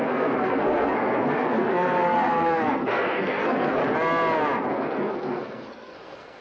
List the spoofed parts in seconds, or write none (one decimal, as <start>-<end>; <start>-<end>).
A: 0.0-3.8; 4.7-6.4